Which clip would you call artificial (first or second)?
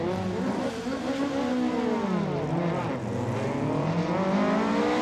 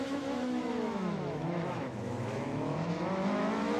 second